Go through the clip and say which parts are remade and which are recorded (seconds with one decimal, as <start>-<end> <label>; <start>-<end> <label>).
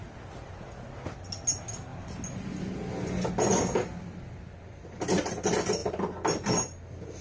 0.0-7.2 recorded